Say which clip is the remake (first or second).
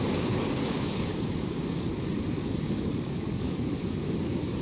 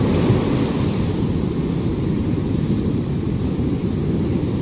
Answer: first